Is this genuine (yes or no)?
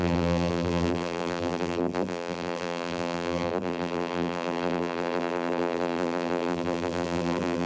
no